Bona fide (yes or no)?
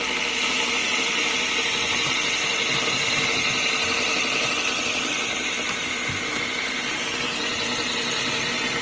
yes